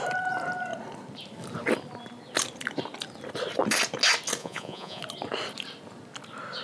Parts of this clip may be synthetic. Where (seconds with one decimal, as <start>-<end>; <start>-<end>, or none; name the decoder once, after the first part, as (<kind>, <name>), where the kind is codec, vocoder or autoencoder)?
4.4-5.0 (vocoder, Vocos)